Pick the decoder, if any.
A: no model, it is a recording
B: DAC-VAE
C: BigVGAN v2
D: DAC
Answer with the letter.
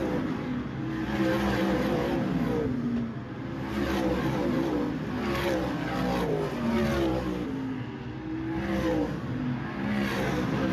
A